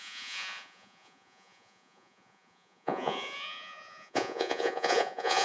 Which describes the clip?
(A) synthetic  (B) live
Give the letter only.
A